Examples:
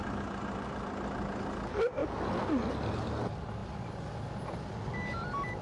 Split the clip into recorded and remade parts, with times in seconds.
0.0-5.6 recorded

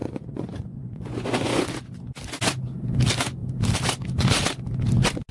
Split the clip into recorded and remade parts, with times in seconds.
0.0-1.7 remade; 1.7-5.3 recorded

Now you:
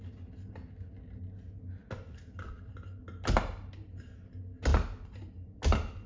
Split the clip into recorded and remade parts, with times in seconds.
0.0-6.1 recorded

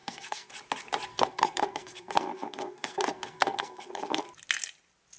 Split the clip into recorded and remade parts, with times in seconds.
0.0-0.5 remade; 0.5-1.1 recorded; 1.1-4.2 remade; 4.2-5.2 recorded